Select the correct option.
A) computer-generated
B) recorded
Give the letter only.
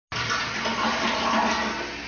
B